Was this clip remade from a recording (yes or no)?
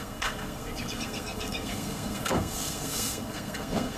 yes